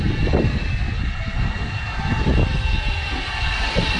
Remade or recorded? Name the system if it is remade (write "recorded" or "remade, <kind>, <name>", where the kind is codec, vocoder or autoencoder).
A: recorded